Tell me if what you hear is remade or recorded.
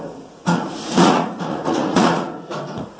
remade